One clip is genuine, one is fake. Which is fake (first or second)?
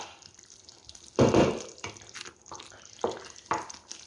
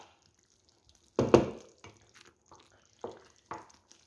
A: first